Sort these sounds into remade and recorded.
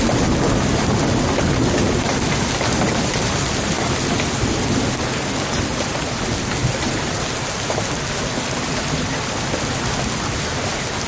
recorded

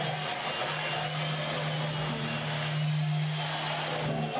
recorded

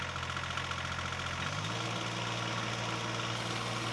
recorded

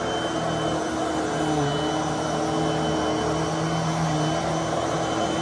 recorded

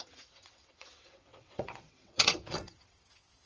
remade